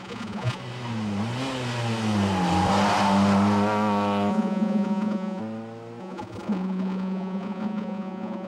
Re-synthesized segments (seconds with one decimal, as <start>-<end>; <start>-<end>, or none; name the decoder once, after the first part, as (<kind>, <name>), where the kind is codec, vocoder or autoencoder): 0.0-0.6 (vocoder, Vocos); 4.3-5.4; 6.0-8.5